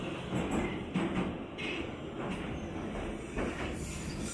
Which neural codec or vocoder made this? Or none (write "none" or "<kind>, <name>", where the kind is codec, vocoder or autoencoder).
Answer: none